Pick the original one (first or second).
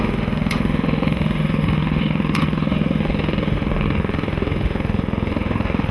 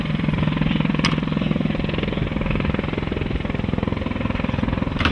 second